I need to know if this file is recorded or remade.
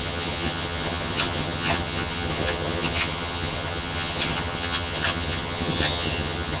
remade